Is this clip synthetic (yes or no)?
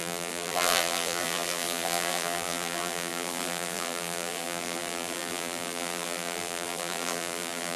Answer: yes